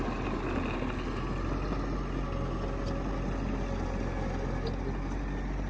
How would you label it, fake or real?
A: real